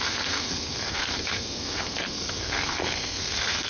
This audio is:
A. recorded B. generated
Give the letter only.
B